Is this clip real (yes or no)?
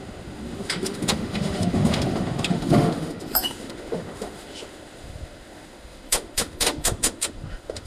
no